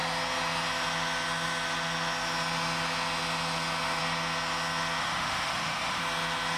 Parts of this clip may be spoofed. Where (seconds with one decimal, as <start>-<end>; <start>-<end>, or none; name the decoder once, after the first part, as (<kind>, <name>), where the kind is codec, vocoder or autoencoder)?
5.0-6.0 (autoencoder, DAC-VAE)